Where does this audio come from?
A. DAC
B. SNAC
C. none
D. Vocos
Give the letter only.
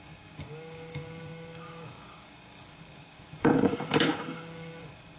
A